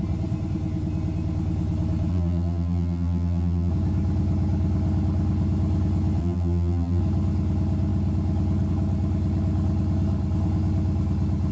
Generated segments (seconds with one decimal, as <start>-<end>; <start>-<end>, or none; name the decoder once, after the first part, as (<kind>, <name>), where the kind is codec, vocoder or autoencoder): 2.1-3.7 (vocoder, BigVGAN v2); 6.2-7.0